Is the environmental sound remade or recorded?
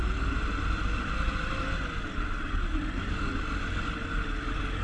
recorded